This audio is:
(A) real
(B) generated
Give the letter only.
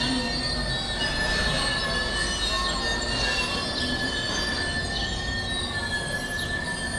A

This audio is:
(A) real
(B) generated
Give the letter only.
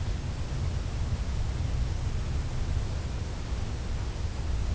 A